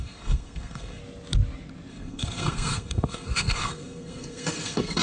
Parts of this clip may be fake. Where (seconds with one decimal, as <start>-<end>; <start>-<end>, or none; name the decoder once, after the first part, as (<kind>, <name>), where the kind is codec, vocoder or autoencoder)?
0.0-1.0 (codec, SNAC); 1.9-5.0